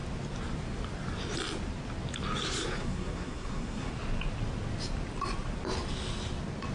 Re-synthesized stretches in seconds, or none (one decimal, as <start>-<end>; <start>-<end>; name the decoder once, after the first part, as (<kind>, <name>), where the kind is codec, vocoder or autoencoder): 2.8-3.9 (codec, SNAC)